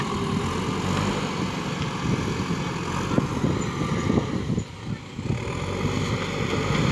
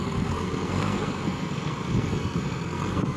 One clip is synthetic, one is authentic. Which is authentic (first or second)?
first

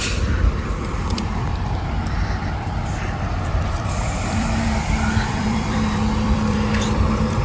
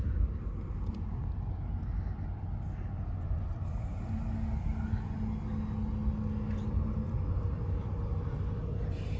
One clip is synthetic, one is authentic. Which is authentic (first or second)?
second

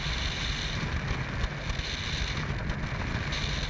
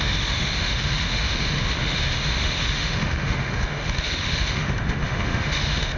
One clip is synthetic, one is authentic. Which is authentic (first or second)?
first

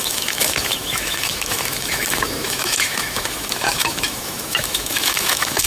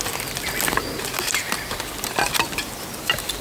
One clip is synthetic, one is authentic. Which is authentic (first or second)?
second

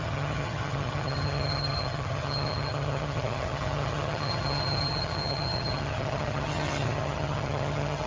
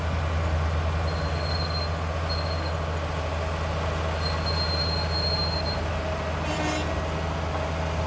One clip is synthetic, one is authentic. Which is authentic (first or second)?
second